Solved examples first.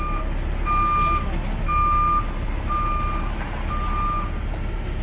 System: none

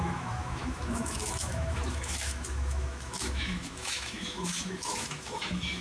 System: autoencoder, DAC-VAE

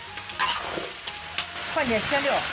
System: none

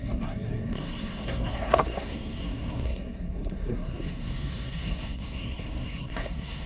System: codec, SNAC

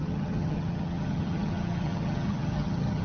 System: vocoder, HiFi-GAN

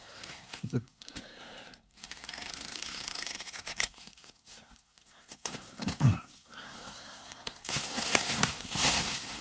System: codec, SNAC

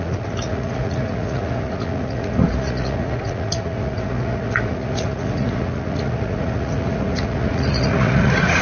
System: vocoder, Vocos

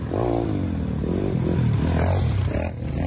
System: none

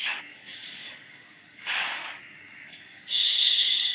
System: codec, DAC